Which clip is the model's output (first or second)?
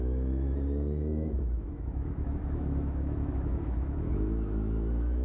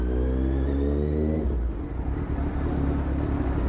first